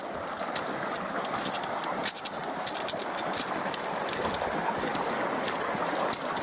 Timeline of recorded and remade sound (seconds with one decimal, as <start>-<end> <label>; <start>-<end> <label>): 0.0-6.4 recorded